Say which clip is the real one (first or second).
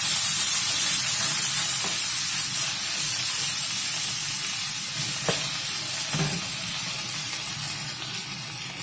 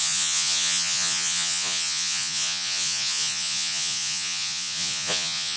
first